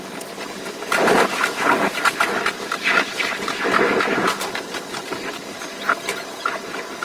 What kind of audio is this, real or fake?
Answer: real